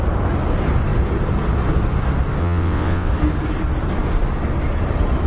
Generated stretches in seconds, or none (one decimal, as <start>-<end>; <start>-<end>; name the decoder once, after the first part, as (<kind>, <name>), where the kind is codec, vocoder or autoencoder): 2.4-3.1 (vocoder, WaveNeXt)